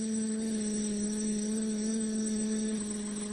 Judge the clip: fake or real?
fake